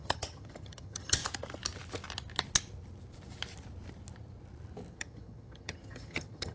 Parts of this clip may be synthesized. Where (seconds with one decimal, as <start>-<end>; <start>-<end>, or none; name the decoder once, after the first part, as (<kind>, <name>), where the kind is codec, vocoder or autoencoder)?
0.0-1.2 (vocoder, HiFi-GAN); 4.9-6.5